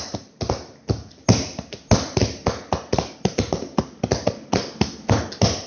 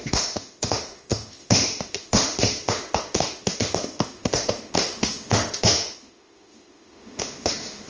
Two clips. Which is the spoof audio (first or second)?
second